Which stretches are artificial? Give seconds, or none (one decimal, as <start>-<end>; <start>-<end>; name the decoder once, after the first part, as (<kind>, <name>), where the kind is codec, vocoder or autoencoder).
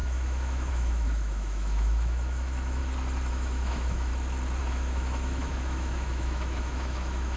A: 0.0-2.8 (autoencoder, DAC-VAE); 3.3-4.1; 4.6-7.4